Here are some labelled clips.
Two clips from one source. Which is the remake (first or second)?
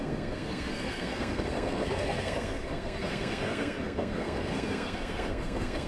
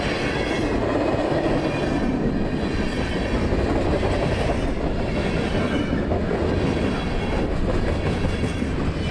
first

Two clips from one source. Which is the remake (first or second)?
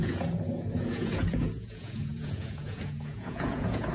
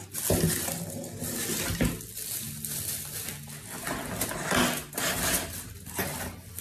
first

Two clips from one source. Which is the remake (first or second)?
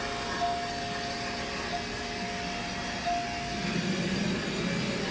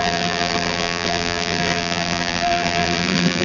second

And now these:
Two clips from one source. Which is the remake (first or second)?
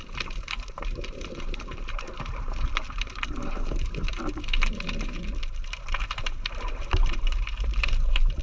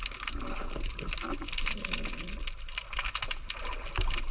first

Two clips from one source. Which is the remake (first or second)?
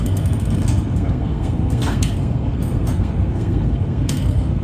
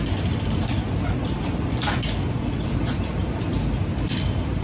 first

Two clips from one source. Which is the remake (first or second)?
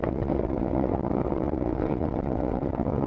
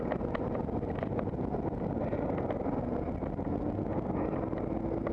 first